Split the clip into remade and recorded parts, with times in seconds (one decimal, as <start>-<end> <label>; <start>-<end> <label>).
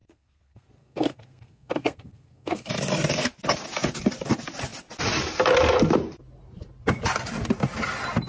0.0-2.7 remade; 2.7-8.3 recorded